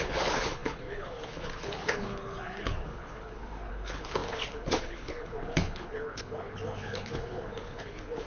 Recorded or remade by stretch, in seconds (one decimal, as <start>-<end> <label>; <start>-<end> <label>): 0.0-8.3 remade